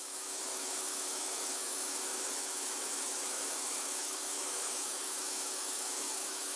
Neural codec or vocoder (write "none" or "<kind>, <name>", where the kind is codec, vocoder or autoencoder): autoencoder, DAC-VAE